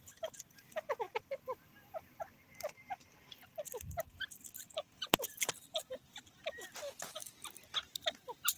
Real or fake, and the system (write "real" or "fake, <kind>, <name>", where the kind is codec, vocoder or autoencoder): real